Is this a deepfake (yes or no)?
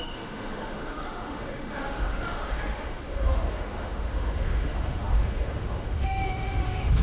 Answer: yes